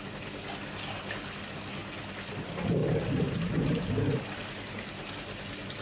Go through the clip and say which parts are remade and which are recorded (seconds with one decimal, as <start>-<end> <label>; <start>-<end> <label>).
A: 0.0-2.8 recorded; 2.8-3.9 remade; 3.9-5.8 recorded